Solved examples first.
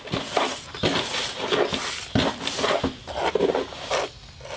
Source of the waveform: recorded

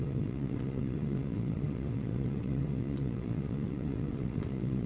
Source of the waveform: remade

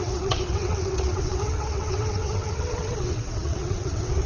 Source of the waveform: remade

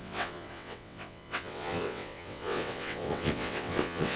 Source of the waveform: remade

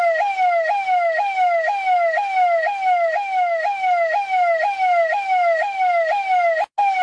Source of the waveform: recorded